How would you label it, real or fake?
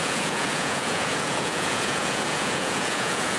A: fake